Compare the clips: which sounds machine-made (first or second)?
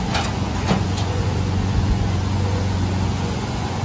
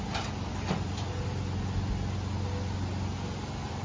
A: first